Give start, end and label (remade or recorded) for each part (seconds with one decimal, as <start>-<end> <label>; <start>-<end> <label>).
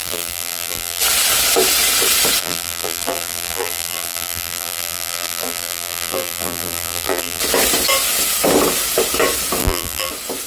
0.0-1.0 remade; 1.0-2.4 recorded; 2.4-7.4 remade; 7.4-9.6 recorded; 9.6-10.1 remade; 10.1-10.5 recorded